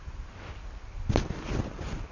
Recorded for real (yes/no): yes